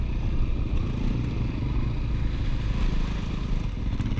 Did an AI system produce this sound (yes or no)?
no